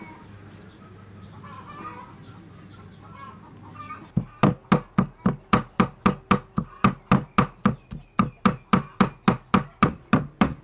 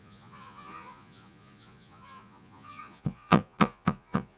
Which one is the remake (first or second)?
second